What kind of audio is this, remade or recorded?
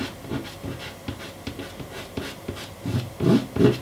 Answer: recorded